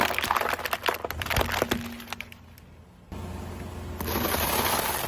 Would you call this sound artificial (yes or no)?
no